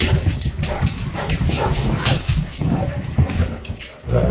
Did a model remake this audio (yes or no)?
yes